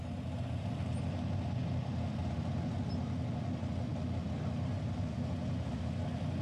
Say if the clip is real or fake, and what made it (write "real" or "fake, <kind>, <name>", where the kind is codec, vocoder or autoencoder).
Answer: real